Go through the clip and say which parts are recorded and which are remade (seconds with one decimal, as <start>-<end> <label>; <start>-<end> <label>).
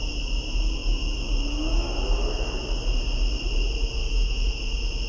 0.0-0.8 recorded; 0.8-2.5 remade; 2.5-4.0 recorded; 4.0-4.6 remade; 4.6-5.1 recorded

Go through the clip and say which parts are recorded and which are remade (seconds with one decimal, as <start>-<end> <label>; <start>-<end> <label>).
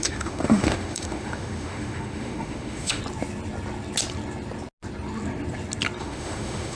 0.0-3.0 remade; 3.0-6.0 recorded; 6.0-6.8 remade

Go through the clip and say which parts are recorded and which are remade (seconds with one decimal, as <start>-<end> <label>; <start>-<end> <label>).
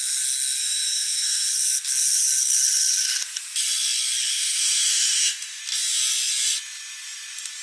0.0-0.6 recorded; 0.6-1.5 remade; 1.5-4.3 recorded; 4.3-5.6 remade; 5.6-7.6 recorded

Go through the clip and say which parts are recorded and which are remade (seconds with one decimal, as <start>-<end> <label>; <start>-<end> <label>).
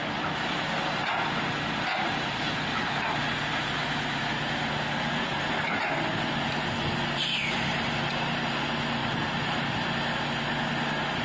0.0-11.2 recorded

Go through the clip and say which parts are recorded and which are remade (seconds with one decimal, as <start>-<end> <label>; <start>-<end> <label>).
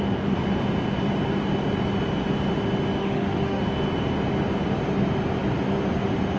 0.0-3.0 recorded; 3.0-3.6 remade; 3.6-6.4 recorded